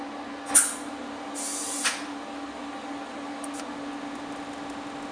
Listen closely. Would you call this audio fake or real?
real